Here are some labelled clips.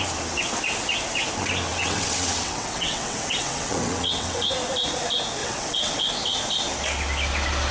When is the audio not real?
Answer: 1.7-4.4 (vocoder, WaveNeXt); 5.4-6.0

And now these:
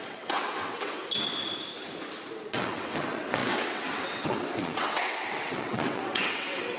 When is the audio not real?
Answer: 0.0-1.0 (vocoder, WaveNeXt); 2.5-6.8

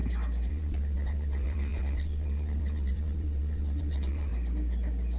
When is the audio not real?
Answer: 0.5-4.3 (vocoder, WaveNeXt)

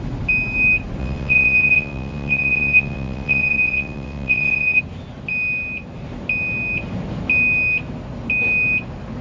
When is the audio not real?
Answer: 1.0-4.8 (vocoder, WaveNeXt)

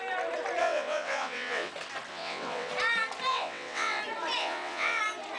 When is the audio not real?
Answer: 0.6-1.7 (vocoder, WaveNeXt); 2.1-2.7; 3.3-4.0; 4.4-5.0

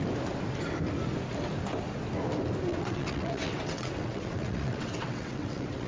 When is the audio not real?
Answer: 2.7-5.9 (vocoder, WaveNeXt)

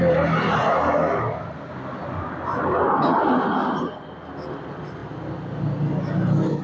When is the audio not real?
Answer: none

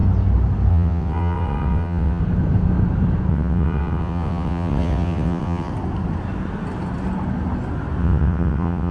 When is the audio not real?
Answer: 0.7-2.2 (vocoder, WaveNeXt); 3.3-5.7; 8.0-8.9